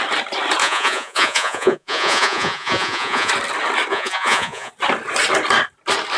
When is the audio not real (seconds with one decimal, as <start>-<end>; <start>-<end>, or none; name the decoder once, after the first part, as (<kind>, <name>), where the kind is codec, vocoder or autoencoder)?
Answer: 0.6-3.3 (vocoder, Vocos); 3.9-4.7